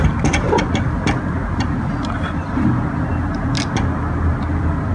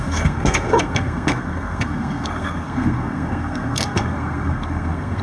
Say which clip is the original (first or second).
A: first